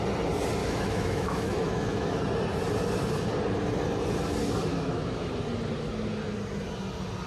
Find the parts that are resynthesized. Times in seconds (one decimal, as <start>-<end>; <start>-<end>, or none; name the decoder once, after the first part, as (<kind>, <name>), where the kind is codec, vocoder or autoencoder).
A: 0.6-2.2 (autoencoder, DAC-VAE); 4.7-5.3